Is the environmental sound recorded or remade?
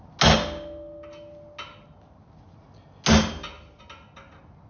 recorded